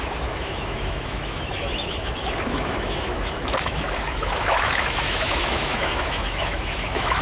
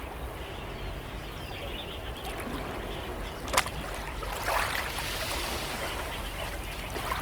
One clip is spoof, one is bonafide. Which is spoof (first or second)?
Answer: first